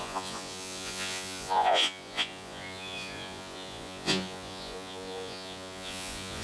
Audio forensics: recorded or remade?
remade